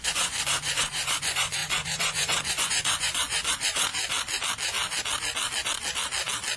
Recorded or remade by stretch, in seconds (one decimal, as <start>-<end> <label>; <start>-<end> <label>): 0.0-3.9 remade; 3.9-6.6 recorded